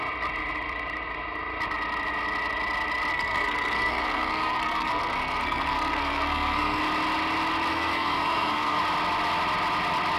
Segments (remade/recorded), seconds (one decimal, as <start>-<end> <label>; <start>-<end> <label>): 0.0-3.1 recorded; 3.1-6.8 remade; 6.8-7.7 recorded; 7.7-8.8 remade; 8.8-10.2 recorded